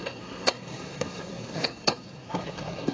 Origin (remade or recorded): remade